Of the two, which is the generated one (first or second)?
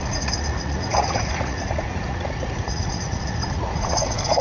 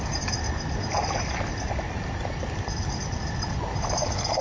first